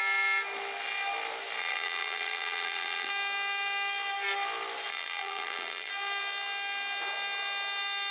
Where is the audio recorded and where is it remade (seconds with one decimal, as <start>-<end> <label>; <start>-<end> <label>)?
0.0-1.6 recorded; 1.6-3.1 remade; 3.1-4.9 recorded; 4.9-5.9 remade; 5.9-8.1 recorded